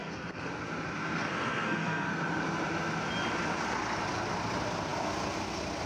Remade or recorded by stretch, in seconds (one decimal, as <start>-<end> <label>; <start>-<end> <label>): 0.0-0.5 remade; 0.5-1.0 recorded; 1.0-2.2 remade; 2.2-5.9 recorded